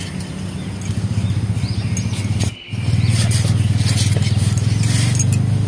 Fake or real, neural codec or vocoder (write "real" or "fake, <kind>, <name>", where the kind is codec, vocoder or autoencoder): real